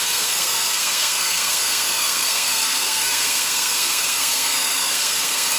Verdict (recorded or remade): remade